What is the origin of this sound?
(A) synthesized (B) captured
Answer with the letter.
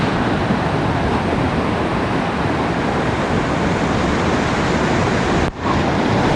B